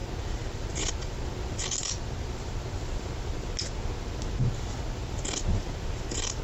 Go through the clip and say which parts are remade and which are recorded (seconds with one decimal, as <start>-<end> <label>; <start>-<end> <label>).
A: 0.0-6.4 recorded